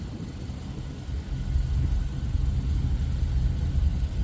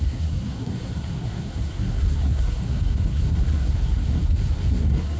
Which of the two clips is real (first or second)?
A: first